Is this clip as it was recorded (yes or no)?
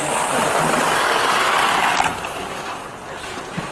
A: yes